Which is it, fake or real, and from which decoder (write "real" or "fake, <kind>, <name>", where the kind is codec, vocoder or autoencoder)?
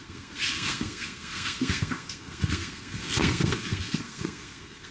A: fake, codec, SNAC